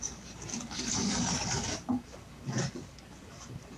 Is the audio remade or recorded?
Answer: remade